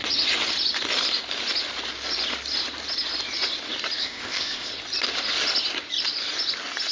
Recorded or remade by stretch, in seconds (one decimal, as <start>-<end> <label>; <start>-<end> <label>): 0.0-4.0 recorded; 4.0-4.7 remade; 4.7-6.9 recorded